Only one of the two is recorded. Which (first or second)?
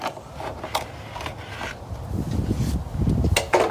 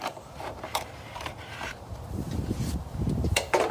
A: first